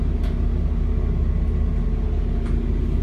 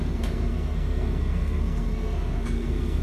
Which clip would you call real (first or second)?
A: first